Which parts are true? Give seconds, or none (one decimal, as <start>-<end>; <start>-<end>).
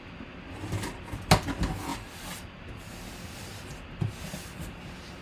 0.0-5.2